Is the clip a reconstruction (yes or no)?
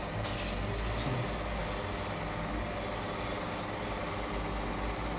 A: no